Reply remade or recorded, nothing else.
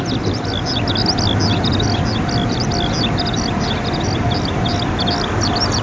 recorded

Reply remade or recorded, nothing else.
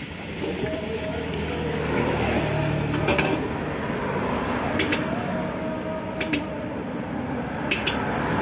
recorded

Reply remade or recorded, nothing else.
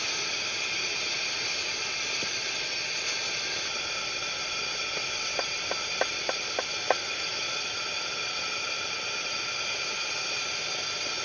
recorded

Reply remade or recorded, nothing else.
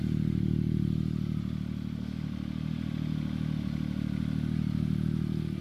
recorded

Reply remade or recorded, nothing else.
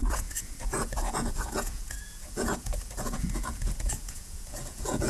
remade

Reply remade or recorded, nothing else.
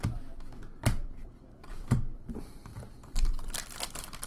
remade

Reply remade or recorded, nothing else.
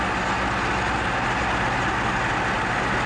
recorded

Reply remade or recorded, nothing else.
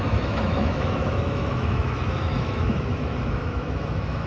remade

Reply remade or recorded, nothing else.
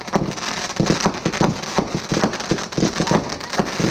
recorded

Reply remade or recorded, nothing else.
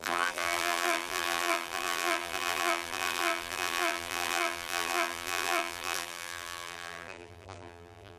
remade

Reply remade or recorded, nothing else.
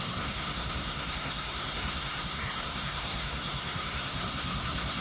remade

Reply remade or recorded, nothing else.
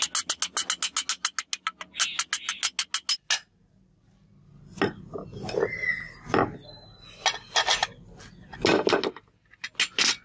recorded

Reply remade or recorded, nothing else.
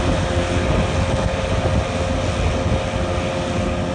recorded